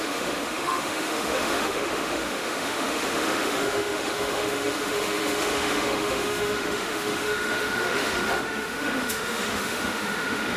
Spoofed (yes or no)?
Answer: yes